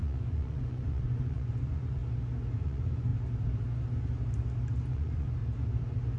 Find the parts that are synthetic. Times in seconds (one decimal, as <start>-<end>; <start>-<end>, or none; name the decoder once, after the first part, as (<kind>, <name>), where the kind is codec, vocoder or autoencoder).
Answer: 0.0-2.0 (vocoder, Vocos); 2.6-3.1; 4.9-5.4